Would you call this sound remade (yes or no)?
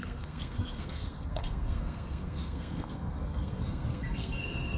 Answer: yes